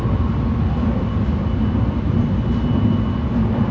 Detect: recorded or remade recorded